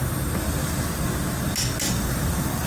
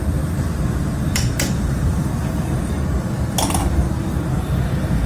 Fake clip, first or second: second